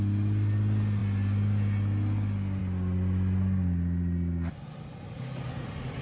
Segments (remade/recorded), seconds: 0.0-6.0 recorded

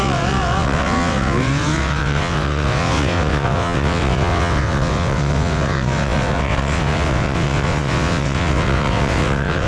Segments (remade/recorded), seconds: 0.0-9.7 remade

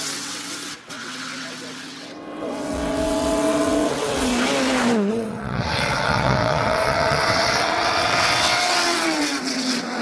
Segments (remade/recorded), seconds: 0.0-4.3 remade; 4.3-5.1 recorded; 5.1-10.0 remade

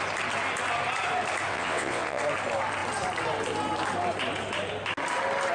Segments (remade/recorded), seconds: 0.0-1.5 recorded; 1.5-2.2 remade; 2.2-5.5 recorded

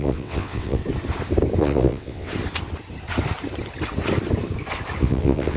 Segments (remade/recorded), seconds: 0.0-0.8 remade; 0.8-1.6 recorded; 1.6-2.3 remade; 2.3-5.0 recorded; 5.0-5.6 remade